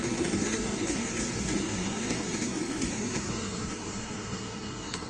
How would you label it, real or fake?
fake